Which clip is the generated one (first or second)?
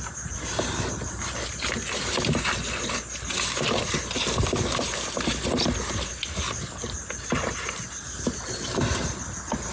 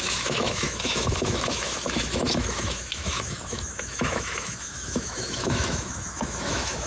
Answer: second